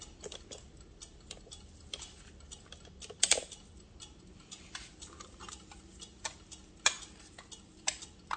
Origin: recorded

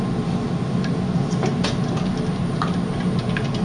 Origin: recorded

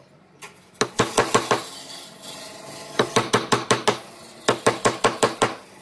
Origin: recorded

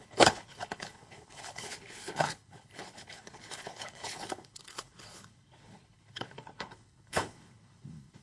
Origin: remade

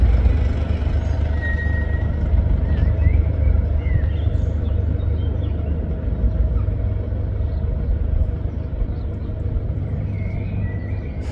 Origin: recorded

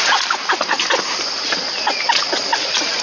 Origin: recorded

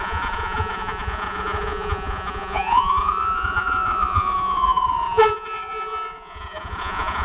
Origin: remade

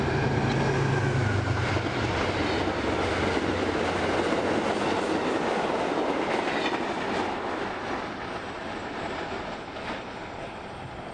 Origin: recorded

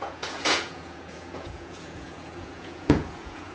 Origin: remade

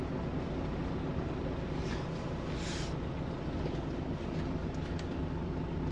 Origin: recorded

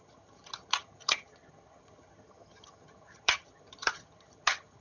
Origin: remade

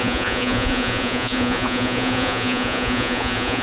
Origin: remade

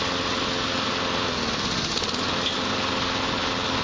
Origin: recorded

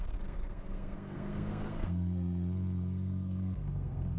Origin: remade